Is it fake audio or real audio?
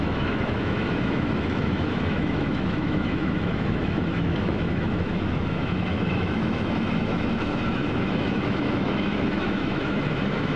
fake